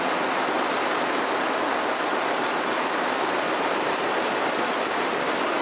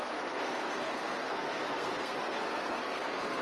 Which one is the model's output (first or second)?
second